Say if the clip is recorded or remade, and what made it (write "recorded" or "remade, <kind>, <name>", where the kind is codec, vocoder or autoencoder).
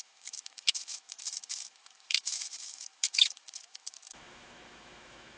remade, autoencoder, DAC-VAE